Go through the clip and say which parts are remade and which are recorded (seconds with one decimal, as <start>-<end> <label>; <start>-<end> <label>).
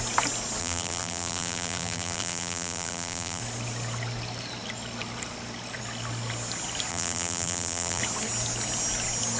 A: 0.0-0.6 recorded; 0.6-3.4 remade; 3.4-6.9 recorded; 6.9-8.0 remade; 8.0-9.4 recorded